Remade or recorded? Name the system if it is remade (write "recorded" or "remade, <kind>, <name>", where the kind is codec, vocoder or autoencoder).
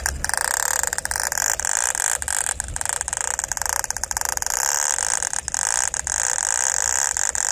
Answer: recorded